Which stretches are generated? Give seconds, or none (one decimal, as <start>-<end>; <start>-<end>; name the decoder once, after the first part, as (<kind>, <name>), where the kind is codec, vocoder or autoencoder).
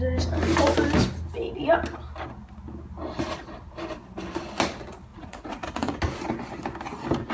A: 5.1-6.0 (vocoder, Vocos)